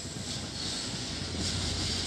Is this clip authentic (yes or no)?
no